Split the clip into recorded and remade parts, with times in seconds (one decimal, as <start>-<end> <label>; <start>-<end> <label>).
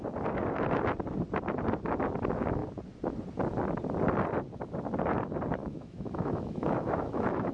0.0-5.6 recorded; 5.6-7.5 remade